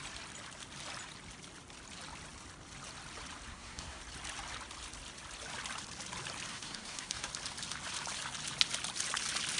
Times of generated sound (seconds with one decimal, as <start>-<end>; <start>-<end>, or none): 3.5-4.0; 6.5-7.3